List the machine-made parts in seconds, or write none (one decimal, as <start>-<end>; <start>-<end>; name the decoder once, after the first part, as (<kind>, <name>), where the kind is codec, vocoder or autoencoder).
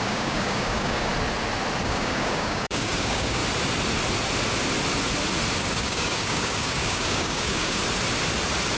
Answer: 0.0-1.1 (codec, DAC); 1.8-3.4; 5.6-7.8